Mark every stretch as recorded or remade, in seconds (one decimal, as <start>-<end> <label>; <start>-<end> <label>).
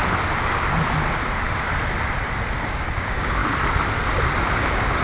0.0-2.7 recorded; 2.7-3.4 remade; 3.4-4.4 recorded; 4.4-5.0 remade